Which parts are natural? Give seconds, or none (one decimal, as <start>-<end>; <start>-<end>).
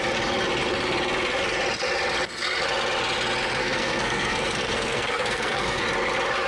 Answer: 0.0-3.6; 5.8-6.5